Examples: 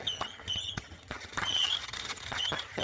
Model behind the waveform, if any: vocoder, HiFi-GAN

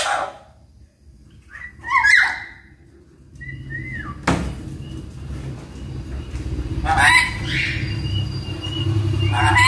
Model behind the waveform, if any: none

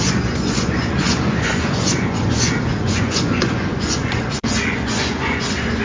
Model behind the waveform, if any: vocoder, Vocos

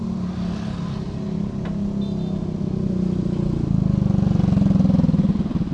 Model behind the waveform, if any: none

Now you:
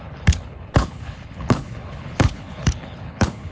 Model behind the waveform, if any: codec, HILCodec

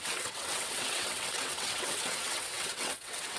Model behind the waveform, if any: vocoder, WaveNeXt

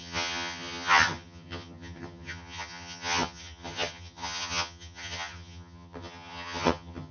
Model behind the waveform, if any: vocoder, HiFi-GAN